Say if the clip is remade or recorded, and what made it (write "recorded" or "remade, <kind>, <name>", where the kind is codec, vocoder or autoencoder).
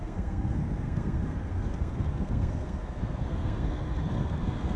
remade, codec, SNAC